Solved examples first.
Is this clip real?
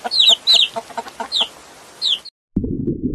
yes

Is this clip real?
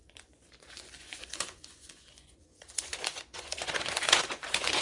no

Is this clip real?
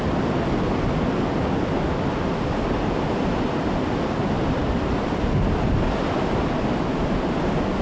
yes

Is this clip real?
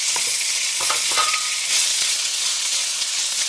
no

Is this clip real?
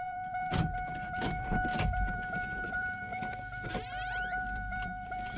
no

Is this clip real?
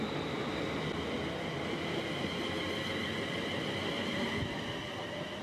yes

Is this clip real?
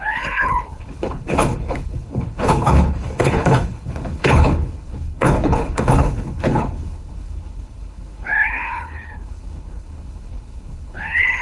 no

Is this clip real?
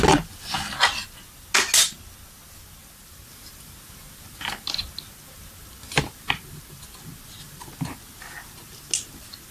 yes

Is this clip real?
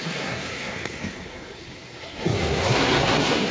no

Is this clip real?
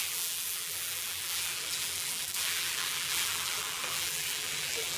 no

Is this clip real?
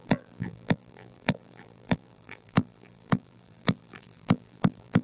no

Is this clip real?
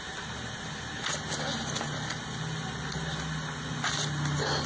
yes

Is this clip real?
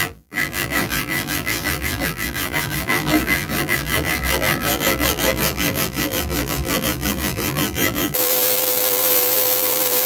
no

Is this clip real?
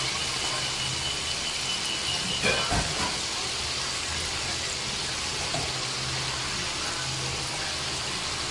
yes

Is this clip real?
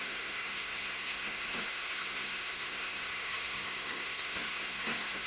no